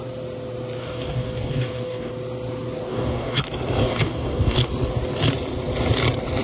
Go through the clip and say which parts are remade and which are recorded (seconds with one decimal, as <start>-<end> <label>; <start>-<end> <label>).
0.0-0.8 recorded; 0.8-2.1 remade; 2.1-2.9 recorded; 2.9-3.4 remade; 3.4-3.8 recorded; 3.8-4.7 remade; 4.7-6.4 recorded